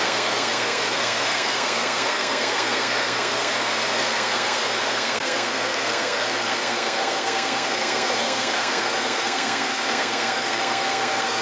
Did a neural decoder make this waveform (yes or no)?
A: yes